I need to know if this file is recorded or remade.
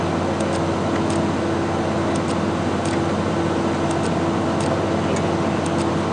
recorded